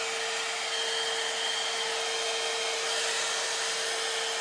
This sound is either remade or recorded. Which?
recorded